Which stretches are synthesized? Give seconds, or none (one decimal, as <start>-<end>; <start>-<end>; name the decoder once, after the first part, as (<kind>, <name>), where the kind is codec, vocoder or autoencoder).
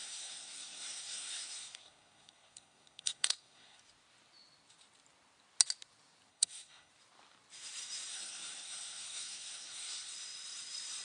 0.0-3.8 (codec, SNAC); 6.3-6.9; 8.1-10.1